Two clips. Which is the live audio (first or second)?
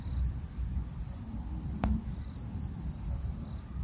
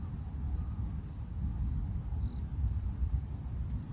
second